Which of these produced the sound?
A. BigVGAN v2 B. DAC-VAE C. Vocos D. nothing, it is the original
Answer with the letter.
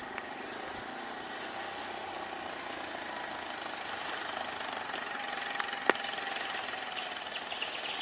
D